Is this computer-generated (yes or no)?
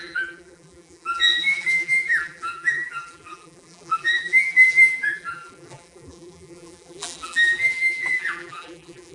yes